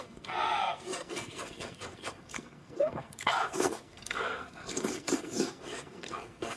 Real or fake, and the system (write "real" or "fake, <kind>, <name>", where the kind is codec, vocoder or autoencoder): fake, codec, SNAC